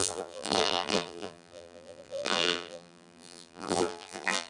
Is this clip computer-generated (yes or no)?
yes